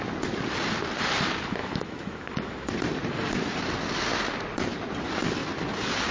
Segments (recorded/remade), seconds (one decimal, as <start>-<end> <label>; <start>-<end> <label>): 0.0-1.6 recorded; 1.6-2.7 remade; 2.7-6.1 recorded